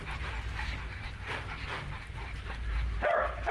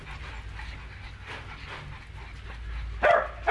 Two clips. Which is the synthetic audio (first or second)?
first